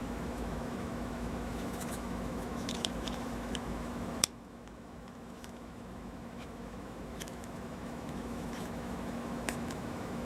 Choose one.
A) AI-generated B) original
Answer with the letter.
A